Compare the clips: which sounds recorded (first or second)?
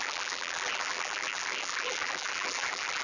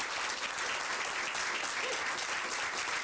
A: second